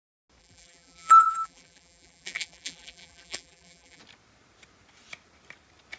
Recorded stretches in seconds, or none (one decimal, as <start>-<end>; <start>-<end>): 0.0-0.4; 4.0-6.0